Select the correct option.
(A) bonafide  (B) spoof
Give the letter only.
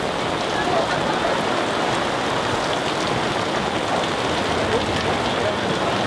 A